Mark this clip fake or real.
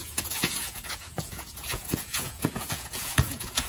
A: fake